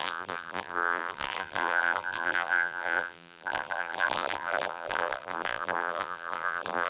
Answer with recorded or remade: remade